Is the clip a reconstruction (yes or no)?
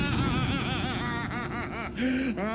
no